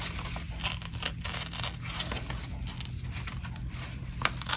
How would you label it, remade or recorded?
recorded